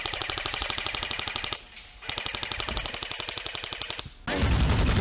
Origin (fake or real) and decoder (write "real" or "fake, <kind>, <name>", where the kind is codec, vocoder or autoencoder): real